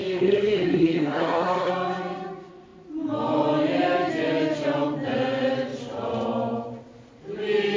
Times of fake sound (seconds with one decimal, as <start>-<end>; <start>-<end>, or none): 0.0-1.7